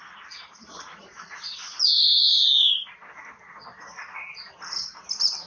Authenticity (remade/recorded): recorded